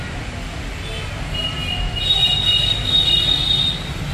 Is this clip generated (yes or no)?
no